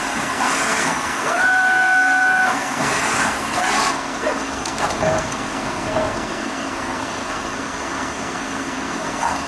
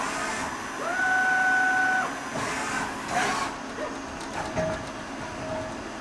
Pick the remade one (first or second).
first